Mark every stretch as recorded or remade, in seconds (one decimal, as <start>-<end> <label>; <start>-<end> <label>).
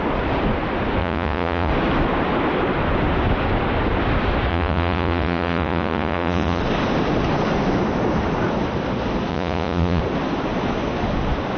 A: 0.0-1.0 recorded; 1.0-1.7 remade; 1.7-4.5 recorded; 4.5-6.6 remade; 6.6-9.3 recorded; 9.3-10.0 remade; 10.0-11.6 recorded